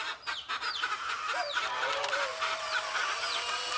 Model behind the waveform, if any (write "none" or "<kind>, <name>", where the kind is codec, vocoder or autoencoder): none